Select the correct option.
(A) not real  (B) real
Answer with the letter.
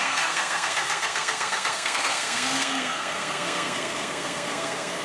A